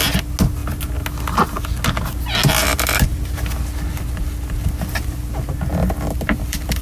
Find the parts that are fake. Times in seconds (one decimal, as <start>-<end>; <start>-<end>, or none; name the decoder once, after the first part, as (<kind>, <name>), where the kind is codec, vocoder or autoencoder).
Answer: 5.7-6.8 (vocoder, BigVGAN v2)